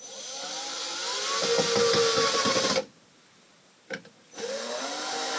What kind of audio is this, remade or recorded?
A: recorded